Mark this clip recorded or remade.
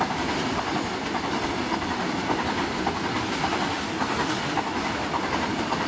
recorded